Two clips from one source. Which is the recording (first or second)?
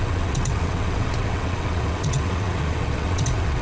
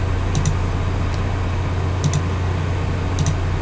second